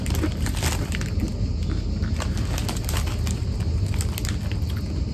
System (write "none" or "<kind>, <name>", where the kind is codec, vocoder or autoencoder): none